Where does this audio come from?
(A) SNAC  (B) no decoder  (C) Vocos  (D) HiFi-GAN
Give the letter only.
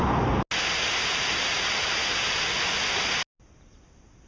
B